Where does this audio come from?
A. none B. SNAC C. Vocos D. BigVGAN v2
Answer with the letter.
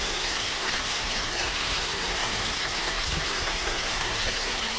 B